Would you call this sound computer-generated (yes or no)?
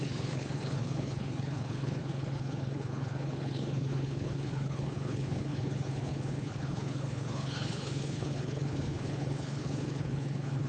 yes